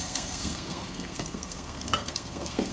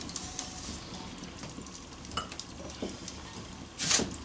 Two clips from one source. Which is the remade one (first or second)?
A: first